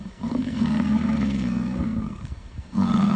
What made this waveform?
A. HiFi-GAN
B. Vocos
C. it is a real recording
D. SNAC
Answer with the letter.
D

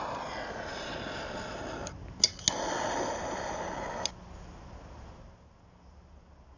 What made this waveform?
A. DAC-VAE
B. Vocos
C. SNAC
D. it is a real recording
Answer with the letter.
D